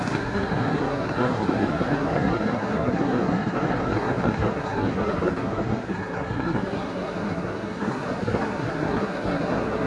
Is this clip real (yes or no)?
no